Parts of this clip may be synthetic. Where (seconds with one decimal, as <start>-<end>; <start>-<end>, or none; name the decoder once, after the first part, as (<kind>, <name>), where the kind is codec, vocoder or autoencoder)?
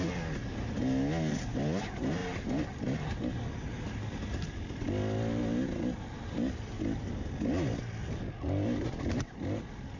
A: none